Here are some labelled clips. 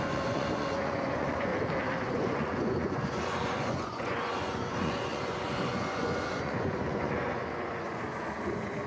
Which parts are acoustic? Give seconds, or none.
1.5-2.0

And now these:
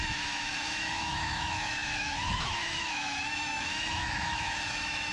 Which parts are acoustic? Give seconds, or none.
none

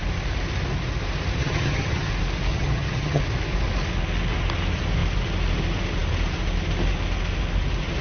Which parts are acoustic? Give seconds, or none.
0.0-1.4; 2.1-2.5; 3.2-8.0

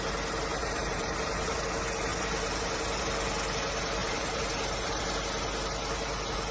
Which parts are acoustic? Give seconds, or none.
0.0-0.6; 1.6-2.1; 3.0-4.0; 5.0-6.5

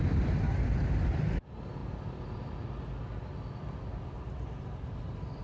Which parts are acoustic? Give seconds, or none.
0.0-5.4

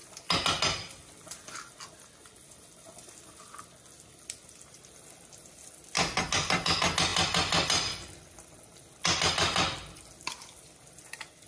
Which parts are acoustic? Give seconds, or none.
0.0-11.5